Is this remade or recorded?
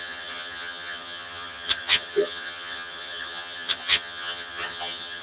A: remade